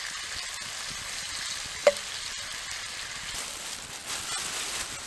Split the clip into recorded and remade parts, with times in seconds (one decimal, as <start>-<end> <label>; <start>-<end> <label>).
0.0-5.1 recorded